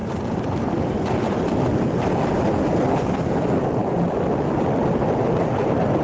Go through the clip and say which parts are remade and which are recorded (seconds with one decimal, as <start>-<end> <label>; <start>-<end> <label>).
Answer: 0.0-2.7 remade; 2.7-6.0 recorded